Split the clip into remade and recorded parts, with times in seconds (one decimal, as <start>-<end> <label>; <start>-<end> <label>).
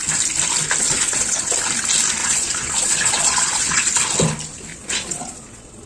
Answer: 0.0-0.8 recorded; 0.8-1.5 remade; 1.5-2.2 recorded; 2.2-3.9 remade; 3.9-4.7 recorded; 4.7-5.9 remade